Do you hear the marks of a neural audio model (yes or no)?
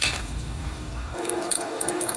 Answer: yes